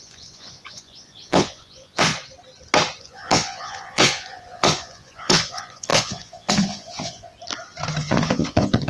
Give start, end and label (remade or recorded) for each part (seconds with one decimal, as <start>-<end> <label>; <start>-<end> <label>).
0.0-2.1 remade; 2.1-3.0 recorded; 3.0-7.3 remade; 7.3-8.0 recorded; 8.0-8.9 remade